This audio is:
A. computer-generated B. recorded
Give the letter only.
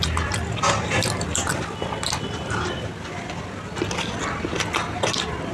B